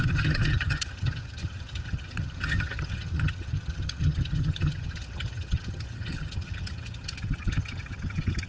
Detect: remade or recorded remade